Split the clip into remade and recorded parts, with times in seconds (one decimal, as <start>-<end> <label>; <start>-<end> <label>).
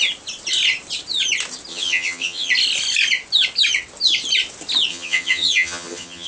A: 0.0-1.7 recorded; 1.7-2.5 remade; 2.5-4.9 recorded; 4.9-6.3 remade